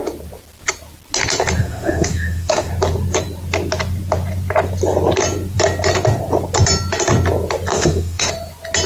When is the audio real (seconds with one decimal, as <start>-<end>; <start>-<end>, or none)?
0.0-1.6; 2.7-7.7; 8.3-8.9